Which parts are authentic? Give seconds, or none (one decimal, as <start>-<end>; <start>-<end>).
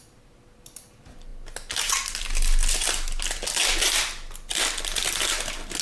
0.0-5.8